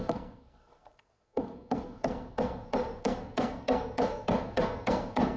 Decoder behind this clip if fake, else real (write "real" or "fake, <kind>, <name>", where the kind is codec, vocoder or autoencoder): fake, codec, SNAC